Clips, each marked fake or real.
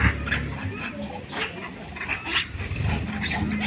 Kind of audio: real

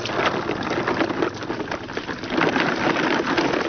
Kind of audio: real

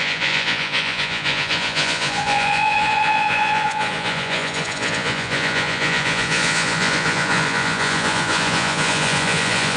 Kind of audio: fake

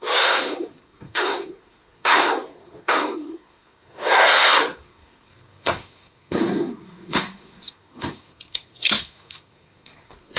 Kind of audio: fake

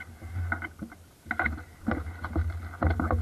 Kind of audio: real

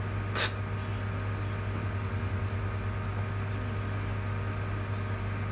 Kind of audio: real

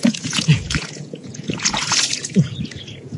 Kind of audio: fake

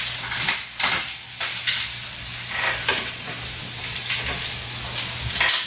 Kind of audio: real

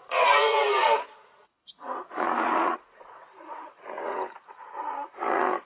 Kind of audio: fake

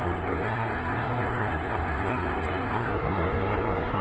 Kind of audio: fake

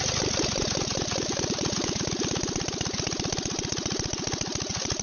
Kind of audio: real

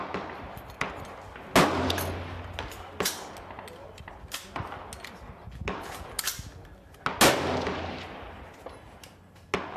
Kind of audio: real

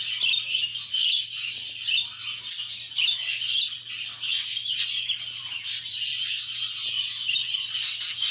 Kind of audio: real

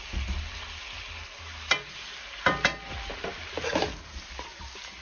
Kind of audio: real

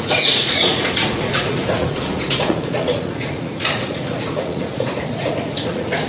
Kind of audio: fake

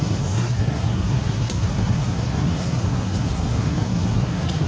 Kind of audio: fake